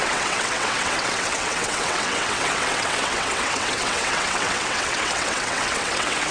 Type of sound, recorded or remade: remade